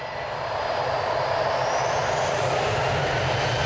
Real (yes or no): yes